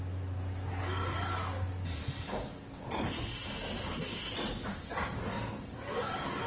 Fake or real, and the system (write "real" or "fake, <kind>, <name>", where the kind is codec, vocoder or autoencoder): real